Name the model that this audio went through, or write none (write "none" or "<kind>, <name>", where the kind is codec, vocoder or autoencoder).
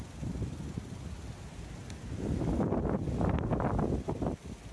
none